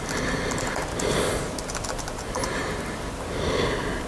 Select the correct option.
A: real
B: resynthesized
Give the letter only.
A